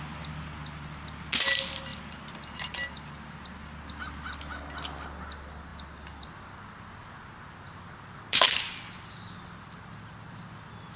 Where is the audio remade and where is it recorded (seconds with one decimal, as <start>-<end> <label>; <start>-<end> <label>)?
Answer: 0.0-11.0 recorded